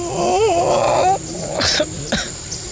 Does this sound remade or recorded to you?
recorded